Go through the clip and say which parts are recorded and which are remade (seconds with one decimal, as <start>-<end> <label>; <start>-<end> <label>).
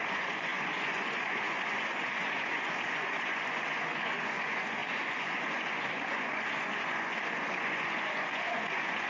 0.0-9.1 remade